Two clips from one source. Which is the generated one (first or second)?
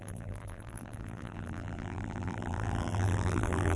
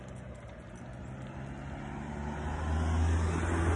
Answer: first